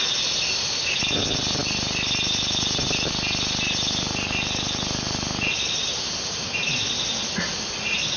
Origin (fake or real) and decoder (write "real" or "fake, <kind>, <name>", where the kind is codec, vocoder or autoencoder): real